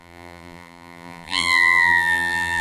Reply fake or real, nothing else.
fake